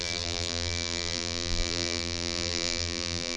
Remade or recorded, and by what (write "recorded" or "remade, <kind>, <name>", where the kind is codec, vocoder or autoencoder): remade, vocoder, BigVGAN v2